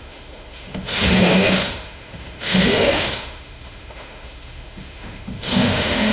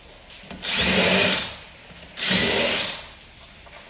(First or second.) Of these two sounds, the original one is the second